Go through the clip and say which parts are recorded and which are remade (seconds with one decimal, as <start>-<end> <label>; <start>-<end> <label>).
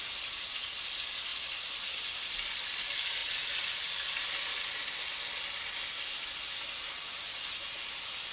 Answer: 0.0-8.3 recorded